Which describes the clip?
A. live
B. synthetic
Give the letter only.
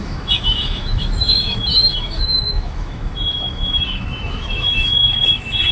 B